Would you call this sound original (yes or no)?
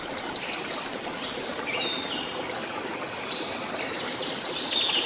yes